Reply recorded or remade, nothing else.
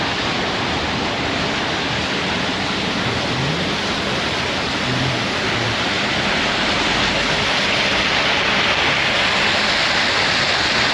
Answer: recorded